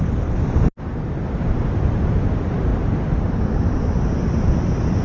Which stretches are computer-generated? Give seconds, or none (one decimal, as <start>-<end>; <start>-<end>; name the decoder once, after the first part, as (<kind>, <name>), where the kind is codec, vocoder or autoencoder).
2.7-3.4 (vocoder, BigVGAN v2)